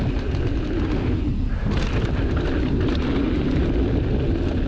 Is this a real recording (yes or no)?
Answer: yes